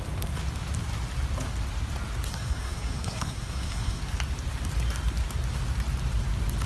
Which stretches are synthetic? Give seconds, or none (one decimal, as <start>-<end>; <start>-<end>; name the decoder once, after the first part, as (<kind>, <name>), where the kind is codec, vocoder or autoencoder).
2.3-4.0 (codec, SNAC)